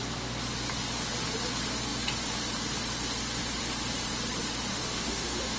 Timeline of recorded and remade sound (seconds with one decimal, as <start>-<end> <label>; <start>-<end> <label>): 0.0-4.7 recorded; 4.7-5.6 remade